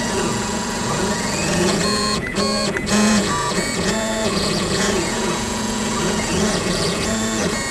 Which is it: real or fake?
fake